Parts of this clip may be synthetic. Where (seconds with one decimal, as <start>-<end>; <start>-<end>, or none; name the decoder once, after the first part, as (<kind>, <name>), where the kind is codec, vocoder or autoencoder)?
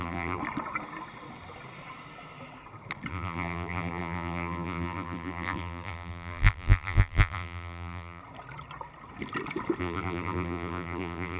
0.0-0.4 (vocoder, BigVGAN v2); 3.1-8.2; 9.8-11.4